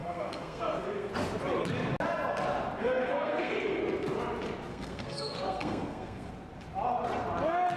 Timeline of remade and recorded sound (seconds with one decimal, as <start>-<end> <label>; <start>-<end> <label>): 0.0-1.1 remade; 1.1-2.8 recorded; 2.8-3.8 remade; 3.8-4.7 recorded; 4.7-6.3 remade; 6.3-7.8 recorded